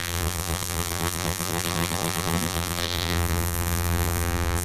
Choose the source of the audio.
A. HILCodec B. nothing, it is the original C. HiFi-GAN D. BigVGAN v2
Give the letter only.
D